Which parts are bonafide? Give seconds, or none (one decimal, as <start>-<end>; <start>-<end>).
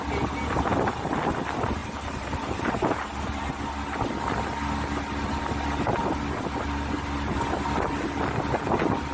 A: 0.0-1.8; 3.5-9.1